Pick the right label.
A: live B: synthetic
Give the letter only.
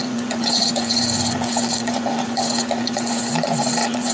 B